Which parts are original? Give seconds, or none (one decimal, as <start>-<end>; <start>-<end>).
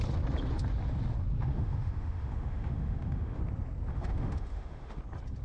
0.0-1.5; 3.4-3.9; 5.0-5.4